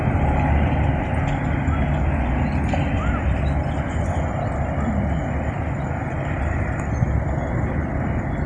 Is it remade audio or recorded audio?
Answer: recorded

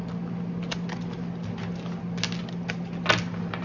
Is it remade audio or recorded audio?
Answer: recorded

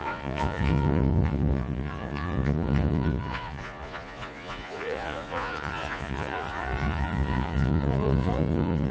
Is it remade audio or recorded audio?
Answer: remade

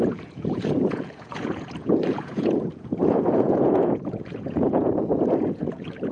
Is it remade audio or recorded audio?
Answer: remade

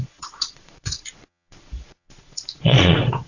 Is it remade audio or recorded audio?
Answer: remade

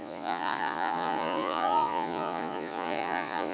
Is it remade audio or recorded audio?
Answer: remade